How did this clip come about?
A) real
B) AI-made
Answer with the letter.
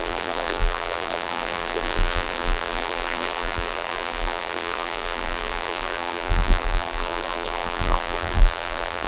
B